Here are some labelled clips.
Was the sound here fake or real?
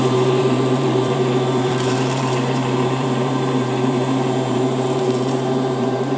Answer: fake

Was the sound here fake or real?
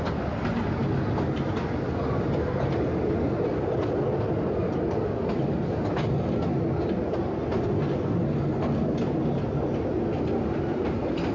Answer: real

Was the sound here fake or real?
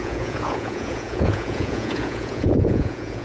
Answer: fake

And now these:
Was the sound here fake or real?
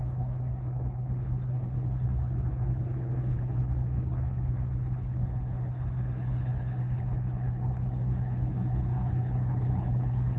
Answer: fake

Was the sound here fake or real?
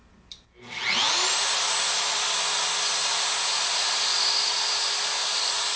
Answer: real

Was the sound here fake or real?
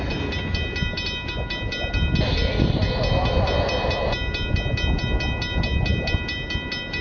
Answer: real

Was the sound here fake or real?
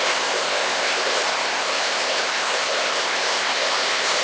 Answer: fake